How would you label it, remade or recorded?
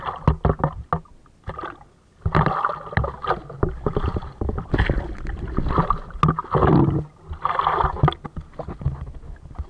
recorded